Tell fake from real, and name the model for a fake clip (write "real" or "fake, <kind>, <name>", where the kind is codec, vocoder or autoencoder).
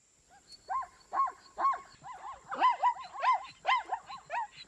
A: real